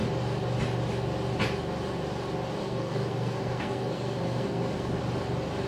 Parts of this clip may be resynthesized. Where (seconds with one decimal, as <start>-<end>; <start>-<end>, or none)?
2.6-5.0